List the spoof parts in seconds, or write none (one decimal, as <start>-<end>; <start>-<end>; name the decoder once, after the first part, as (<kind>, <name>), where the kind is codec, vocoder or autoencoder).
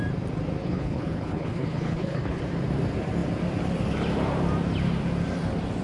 0.6-2.4 (codec, HILCodec)